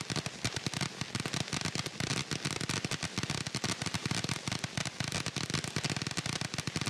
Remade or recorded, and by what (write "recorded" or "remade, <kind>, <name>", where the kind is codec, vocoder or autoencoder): recorded